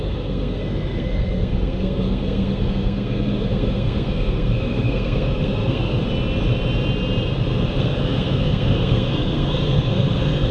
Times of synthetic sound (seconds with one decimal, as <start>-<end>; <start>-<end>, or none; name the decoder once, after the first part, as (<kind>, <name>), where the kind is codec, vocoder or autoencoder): 0.0-6.0 (codec, SNAC); 7.8-10.5